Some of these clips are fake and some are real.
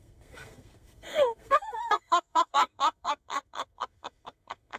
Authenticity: fake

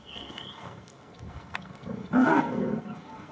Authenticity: fake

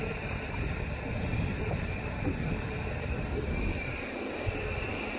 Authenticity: real